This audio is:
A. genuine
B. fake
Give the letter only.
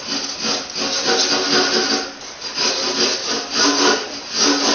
A